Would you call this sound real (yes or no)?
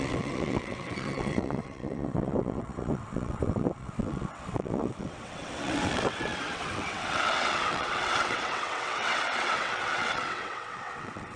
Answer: no